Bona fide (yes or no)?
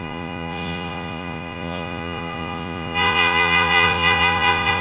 no